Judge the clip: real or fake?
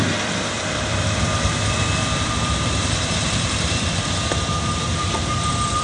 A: fake